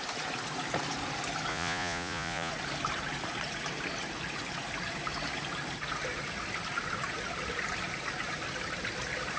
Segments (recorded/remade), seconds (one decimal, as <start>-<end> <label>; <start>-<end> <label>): 0.0-1.5 recorded; 1.5-2.5 remade; 2.5-9.4 recorded

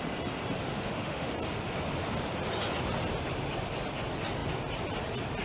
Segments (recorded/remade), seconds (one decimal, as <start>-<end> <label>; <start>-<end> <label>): 0.0-0.7 recorded; 0.7-1.3 remade; 1.3-5.4 recorded

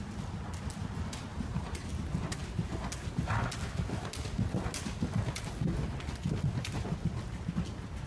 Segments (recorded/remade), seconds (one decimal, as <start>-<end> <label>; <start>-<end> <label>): 0.0-1.3 recorded; 1.3-1.9 remade; 1.9-8.1 recorded